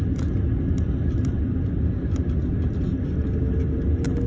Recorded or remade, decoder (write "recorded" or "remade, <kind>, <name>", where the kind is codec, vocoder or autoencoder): recorded